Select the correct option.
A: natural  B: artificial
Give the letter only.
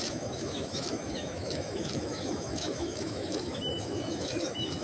B